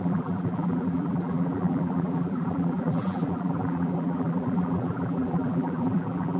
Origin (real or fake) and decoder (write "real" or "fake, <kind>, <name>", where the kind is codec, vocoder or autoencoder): fake, vocoder, BigVGAN v2